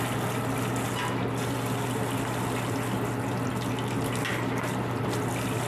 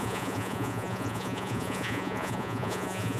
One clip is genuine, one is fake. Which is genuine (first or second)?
first